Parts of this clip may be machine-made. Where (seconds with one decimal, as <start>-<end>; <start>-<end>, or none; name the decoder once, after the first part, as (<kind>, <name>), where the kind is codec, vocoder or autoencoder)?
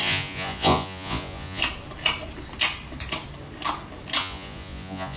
0.0-1.6 (vocoder, Vocos); 4.2-5.2